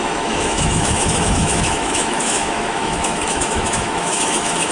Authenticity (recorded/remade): remade